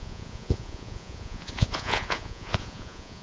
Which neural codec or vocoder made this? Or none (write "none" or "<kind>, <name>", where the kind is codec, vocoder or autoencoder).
vocoder, Vocos